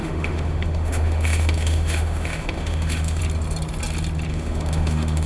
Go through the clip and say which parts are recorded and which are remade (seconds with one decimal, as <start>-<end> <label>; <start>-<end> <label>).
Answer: 0.0-3.2 remade; 3.2-4.3 recorded; 4.3-5.3 remade